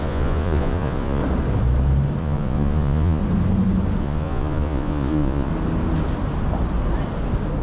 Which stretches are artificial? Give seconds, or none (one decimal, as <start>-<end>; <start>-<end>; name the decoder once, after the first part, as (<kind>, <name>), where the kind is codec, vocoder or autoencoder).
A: 0.0-1.2 (vocoder, Vocos); 2.2-3.2; 4.0-5.5